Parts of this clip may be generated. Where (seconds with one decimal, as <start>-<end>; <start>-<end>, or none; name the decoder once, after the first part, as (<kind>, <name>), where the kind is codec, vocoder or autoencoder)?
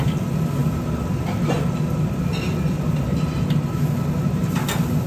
none